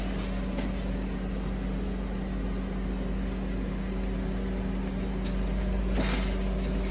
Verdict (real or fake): real